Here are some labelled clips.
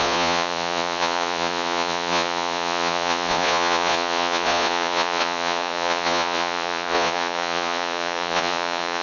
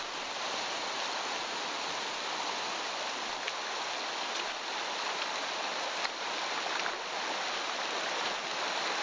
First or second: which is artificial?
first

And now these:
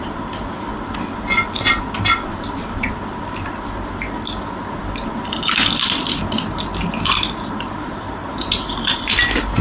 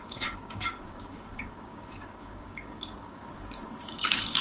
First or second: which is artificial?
second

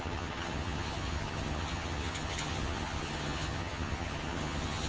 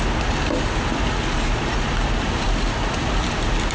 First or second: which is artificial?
first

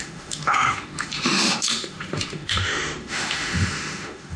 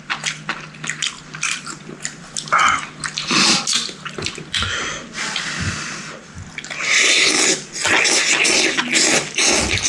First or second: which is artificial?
first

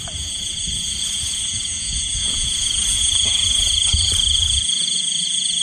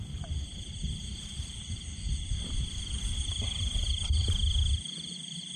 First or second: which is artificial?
first